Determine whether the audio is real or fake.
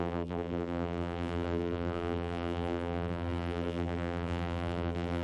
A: fake